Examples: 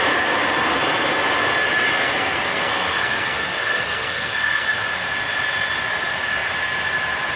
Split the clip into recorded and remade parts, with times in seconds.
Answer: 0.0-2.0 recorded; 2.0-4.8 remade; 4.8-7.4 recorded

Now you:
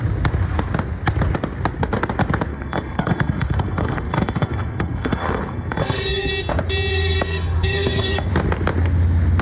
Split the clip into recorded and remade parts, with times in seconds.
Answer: 0.0-2.5 recorded; 2.5-6.3 remade; 6.3-6.9 recorded; 6.9-8.3 remade; 8.3-9.4 recorded

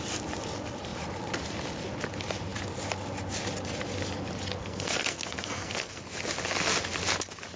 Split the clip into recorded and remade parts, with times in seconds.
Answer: 0.0-4.6 recorded; 4.6-6.0 remade; 6.0-7.6 recorded

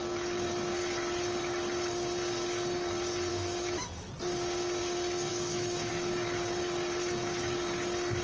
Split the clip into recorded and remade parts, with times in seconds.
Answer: 0.0-3.3 recorded; 3.3-4.1 remade; 4.1-5.3 recorded; 5.3-5.9 remade; 5.9-8.2 recorded

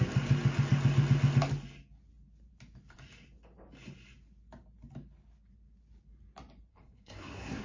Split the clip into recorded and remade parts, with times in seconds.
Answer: 0.0-6.7 recorded; 6.7-7.6 remade

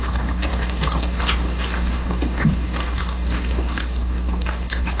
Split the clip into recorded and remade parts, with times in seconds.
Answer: 0.0-5.0 remade

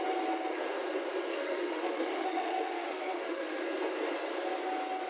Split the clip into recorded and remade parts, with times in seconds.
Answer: 0.0-1.3 recorded; 1.3-3.6 remade; 3.6-5.1 recorded

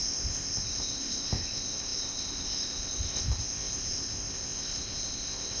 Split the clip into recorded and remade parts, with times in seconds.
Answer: 0.0-5.6 remade